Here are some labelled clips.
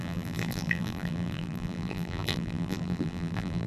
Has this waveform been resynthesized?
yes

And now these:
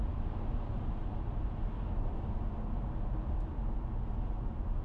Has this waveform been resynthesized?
no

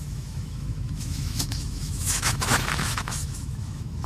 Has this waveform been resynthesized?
yes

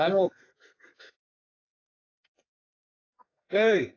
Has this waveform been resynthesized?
yes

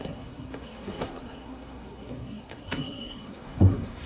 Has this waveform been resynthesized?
yes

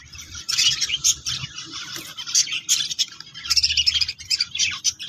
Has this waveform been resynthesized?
yes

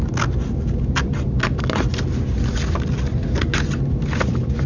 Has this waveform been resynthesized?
no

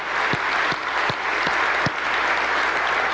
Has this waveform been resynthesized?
no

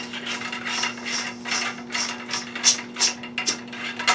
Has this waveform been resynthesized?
no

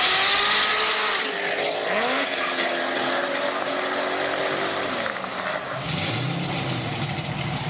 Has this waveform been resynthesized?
no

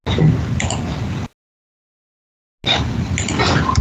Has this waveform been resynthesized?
no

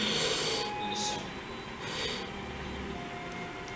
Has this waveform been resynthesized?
no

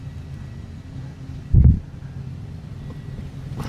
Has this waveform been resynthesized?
no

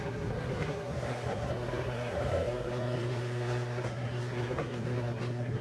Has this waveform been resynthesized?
yes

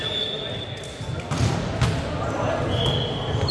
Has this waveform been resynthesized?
no